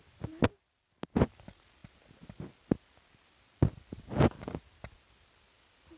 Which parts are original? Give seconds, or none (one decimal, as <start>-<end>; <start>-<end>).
0.0-6.0